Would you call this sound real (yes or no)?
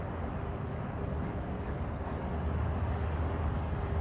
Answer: no